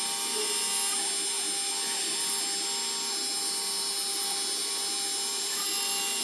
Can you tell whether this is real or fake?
real